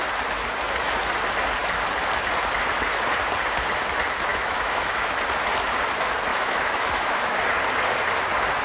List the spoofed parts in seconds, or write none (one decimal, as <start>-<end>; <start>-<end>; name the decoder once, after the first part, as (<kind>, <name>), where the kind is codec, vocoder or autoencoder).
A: 4.3-5.1 (autoencoder, DAC-VAE); 6.3-7.4